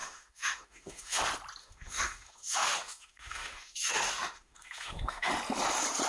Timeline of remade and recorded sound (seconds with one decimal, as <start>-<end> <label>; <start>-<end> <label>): 0.0-1.2 remade; 1.2-1.6 recorded; 1.6-5.3 remade; 5.3-6.1 recorded